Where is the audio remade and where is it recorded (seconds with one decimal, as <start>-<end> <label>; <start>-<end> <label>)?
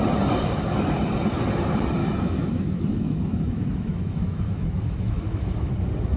0.0-2.0 recorded; 2.0-5.7 remade; 5.7-6.2 recorded